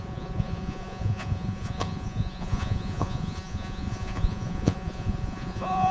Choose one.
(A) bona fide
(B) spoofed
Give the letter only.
B